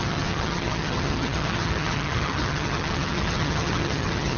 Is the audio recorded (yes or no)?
no